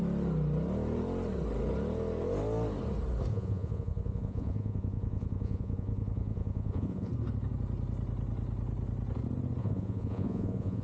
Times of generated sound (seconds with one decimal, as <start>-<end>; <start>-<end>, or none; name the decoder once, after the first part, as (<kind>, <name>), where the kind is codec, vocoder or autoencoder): 3.3-7.1 (vocoder, Vocos); 9.6-10.8